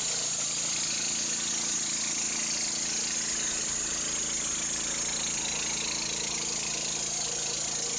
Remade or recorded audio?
recorded